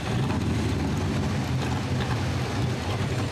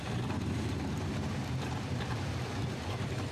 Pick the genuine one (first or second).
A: first